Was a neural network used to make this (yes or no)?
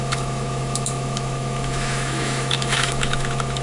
yes